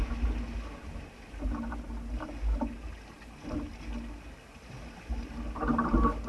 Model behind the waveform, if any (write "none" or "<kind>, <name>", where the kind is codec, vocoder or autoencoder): none